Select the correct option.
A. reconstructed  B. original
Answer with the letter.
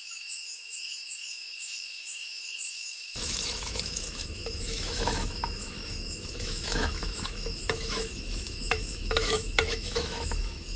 A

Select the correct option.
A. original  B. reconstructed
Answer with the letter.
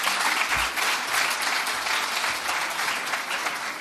A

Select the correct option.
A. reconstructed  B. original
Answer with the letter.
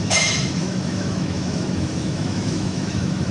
A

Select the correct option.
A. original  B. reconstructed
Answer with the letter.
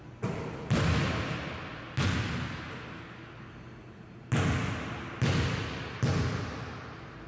A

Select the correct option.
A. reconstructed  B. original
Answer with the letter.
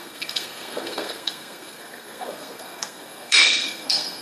A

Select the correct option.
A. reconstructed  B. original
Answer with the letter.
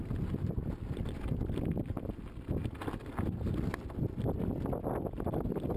B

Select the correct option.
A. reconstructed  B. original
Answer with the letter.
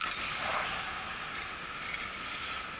B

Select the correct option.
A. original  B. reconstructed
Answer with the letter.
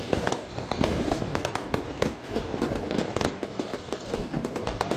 B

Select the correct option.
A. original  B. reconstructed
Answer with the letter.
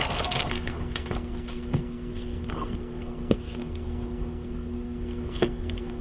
B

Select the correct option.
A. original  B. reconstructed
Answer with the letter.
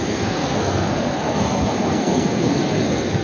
B